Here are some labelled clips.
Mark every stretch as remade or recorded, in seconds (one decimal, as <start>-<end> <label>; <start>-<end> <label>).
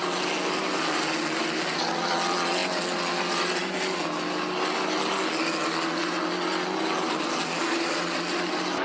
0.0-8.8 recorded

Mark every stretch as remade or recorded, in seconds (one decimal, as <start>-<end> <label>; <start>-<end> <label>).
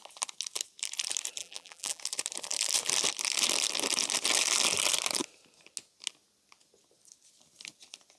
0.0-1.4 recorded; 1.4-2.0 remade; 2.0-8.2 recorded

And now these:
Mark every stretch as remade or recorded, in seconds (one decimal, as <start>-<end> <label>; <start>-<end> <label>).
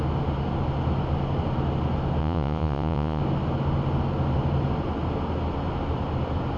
0.0-2.2 recorded; 2.2-3.2 remade; 3.2-6.6 recorded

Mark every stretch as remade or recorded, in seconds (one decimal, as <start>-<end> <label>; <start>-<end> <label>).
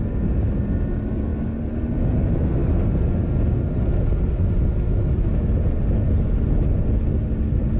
0.0-7.8 recorded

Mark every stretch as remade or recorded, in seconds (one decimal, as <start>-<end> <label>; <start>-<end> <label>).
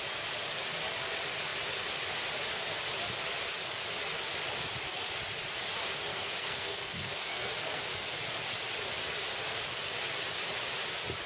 0.0-6.1 recorded; 6.1-7.8 remade; 7.8-11.3 recorded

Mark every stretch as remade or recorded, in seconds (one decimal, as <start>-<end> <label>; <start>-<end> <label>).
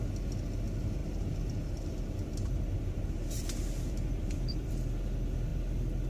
0.0-1.0 recorded; 1.0-4.7 remade; 4.7-6.1 recorded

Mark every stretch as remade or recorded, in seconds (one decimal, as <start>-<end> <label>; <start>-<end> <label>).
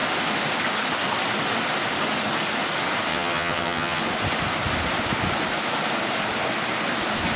0.0-3.1 recorded; 3.1-4.0 remade; 4.0-7.4 recorded